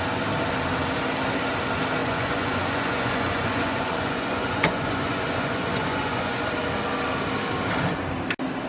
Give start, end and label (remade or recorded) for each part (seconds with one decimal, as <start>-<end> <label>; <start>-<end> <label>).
0.0-2.0 recorded; 2.0-6.5 remade; 6.5-8.7 recorded